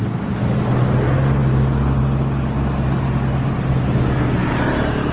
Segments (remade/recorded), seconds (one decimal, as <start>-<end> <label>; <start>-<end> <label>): 0.0-5.1 recorded